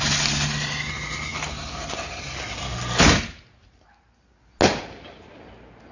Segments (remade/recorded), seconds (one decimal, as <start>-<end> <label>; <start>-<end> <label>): 0.0-5.9 recorded